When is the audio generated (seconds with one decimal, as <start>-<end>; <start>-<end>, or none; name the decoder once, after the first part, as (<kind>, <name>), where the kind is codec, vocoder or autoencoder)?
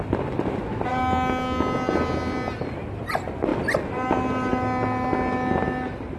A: none